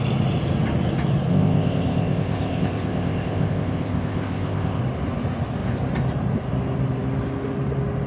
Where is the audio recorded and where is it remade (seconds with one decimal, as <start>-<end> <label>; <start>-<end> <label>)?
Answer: 0.0-1.3 recorded; 1.3-4.8 remade; 4.8-8.1 recorded